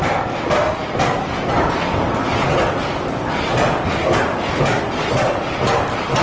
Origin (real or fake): real